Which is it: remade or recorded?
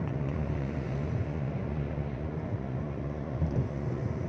remade